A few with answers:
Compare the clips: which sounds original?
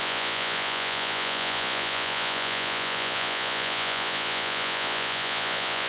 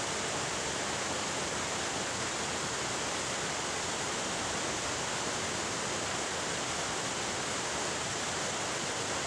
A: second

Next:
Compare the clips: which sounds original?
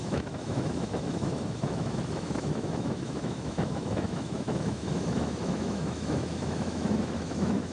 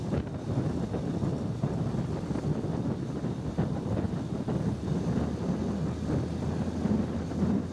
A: second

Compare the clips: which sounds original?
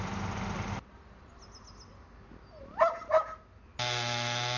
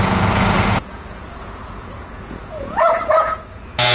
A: first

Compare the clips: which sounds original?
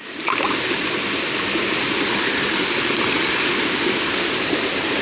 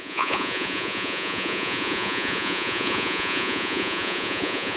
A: first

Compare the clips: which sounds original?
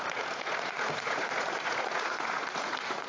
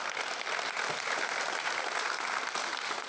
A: second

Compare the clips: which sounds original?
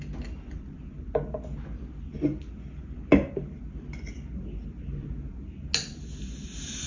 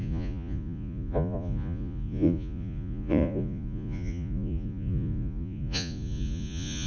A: first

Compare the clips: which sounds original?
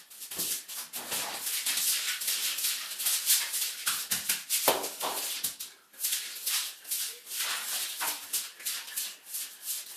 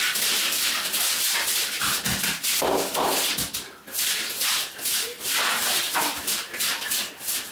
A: first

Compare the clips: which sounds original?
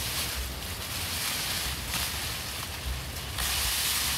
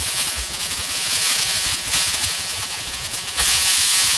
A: first